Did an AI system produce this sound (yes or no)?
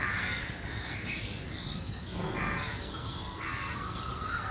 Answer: yes